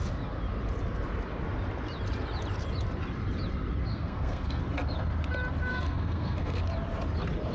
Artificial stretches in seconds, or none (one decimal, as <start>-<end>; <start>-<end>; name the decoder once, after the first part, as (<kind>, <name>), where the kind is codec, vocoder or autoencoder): 3.9-4.6 (codec, SNAC); 5.7-6.6